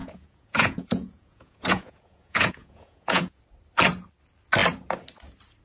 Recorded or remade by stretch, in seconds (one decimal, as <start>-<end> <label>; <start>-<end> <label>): 0.0-3.4 remade; 3.4-5.6 recorded